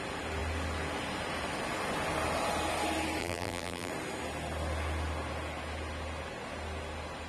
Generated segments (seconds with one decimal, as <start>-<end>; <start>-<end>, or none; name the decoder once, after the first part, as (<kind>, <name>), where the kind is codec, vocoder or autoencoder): 3.2-3.9 (vocoder, BigVGAN v2)